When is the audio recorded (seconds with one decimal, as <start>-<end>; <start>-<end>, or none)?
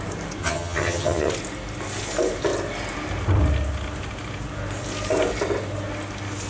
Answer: 0.0-0.4; 1.3-6.5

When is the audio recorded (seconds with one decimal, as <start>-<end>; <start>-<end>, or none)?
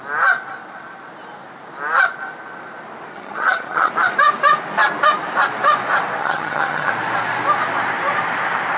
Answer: 0.0-3.1; 3.9-6.2; 6.9-8.8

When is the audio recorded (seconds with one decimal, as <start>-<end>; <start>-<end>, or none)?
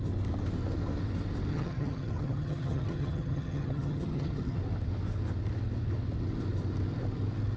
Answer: 0.0-1.5; 4.6-7.6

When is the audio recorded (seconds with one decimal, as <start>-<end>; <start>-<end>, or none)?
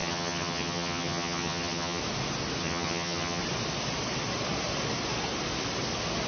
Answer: 2.0-2.6; 3.4-6.3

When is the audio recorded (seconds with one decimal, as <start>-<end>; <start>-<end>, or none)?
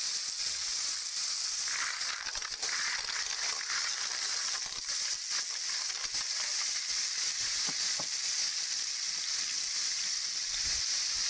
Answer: 0.0-11.3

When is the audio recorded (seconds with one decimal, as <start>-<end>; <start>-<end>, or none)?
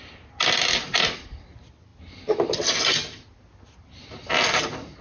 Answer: 0.0-5.0